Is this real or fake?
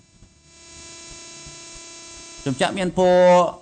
real